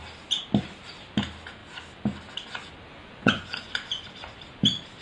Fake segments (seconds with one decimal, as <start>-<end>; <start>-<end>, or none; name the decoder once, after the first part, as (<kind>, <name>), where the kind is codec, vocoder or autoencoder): 3.0-4.1 (vocoder, Vocos)